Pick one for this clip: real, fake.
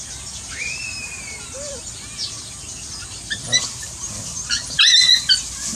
real